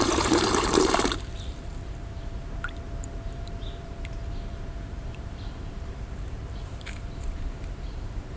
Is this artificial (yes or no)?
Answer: yes